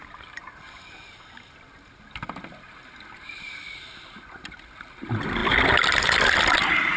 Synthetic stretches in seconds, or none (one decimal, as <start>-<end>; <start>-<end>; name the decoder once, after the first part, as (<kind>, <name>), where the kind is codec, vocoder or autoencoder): none